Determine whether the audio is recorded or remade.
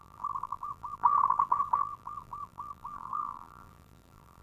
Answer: remade